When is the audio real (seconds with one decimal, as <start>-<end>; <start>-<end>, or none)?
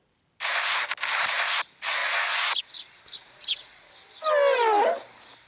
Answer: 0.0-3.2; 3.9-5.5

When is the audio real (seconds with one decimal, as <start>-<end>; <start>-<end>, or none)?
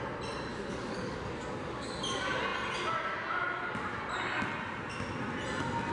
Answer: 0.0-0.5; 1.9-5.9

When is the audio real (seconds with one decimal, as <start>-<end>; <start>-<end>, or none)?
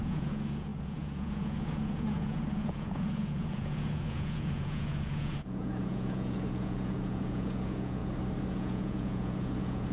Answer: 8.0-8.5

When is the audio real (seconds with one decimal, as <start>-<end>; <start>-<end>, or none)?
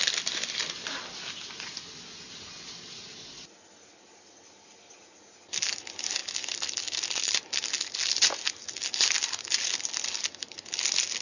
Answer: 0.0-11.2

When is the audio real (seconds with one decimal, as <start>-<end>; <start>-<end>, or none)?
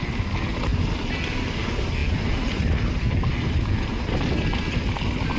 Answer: 0.0-5.4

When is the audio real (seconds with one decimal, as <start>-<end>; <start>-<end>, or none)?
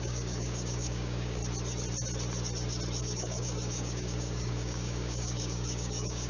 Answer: 1.4-3.0